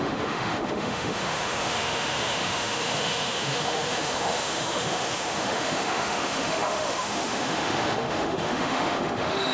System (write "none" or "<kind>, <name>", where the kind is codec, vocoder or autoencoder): autoencoder, DAC-VAE